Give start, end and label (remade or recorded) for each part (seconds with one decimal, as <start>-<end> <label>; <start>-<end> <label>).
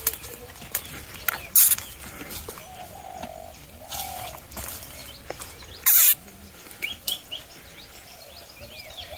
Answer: 0.0-0.4 remade; 0.4-3.1 recorded; 3.1-5.0 remade; 5.0-7.9 recorded; 7.9-9.2 remade